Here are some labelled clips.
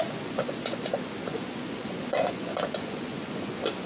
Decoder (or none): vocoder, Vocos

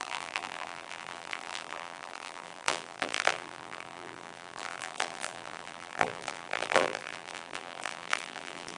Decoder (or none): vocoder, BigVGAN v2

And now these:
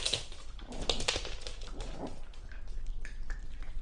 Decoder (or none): none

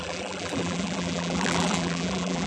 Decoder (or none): vocoder, BigVGAN v2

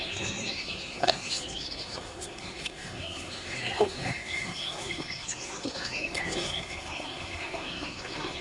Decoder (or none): codec, SNAC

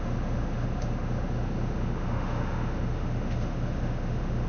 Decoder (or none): autoencoder, DAC-VAE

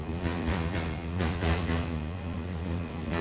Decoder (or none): vocoder, Vocos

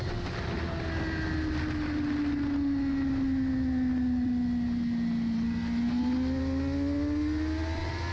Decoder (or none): none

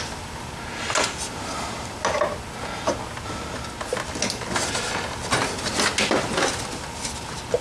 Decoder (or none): none